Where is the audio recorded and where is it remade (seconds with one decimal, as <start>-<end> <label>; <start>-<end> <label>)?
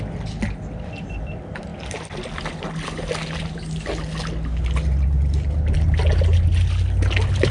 0.0-7.5 recorded